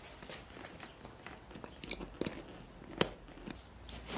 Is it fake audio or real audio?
real